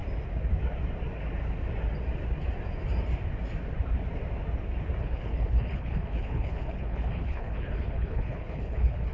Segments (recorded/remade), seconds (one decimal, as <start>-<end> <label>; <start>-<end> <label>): 0.0-5.0 recorded; 5.0-9.1 remade